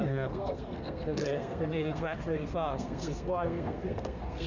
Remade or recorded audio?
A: remade